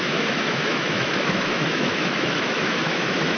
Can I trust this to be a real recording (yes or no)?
no